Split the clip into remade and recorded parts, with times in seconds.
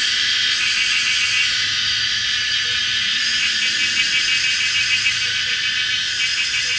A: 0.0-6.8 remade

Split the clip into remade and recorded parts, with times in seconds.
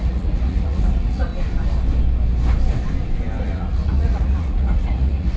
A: 0.0-1.3 remade; 1.3-3.4 recorded; 3.4-5.4 remade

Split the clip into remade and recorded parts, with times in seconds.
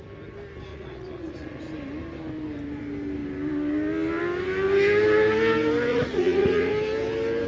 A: 0.0-0.7 recorded; 0.7-1.6 remade; 1.6-5.9 recorded; 5.9-6.7 remade; 6.7-7.5 recorded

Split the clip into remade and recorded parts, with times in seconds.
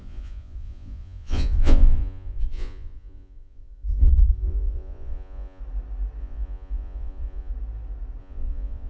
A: 0.0-5.6 remade; 5.6-6.2 recorded; 6.2-7.5 remade; 7.5-8.2 recorded; 8.2-8.9 remade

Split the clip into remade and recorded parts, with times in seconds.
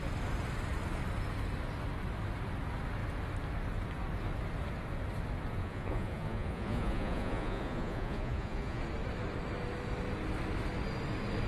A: 0.0-5.6 recorded; 5.6-8.8 remade; 8.8-11.5 recorded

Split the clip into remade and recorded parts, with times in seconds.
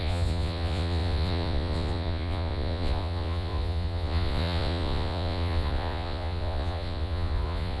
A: 0.0-7.8 remade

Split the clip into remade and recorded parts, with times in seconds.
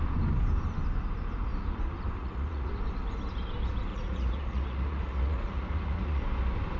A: 0.0-2.2 recorded; 2.2-2.7 remade; 2.7-3.9 recorded; 3.9-6.2 remade; 6.2-6.8 recorded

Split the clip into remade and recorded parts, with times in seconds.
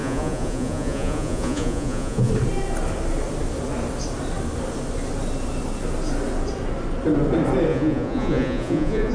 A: 0.0-2.3 remade; 2.3-7.7 recorded; 7.7-9.1 remade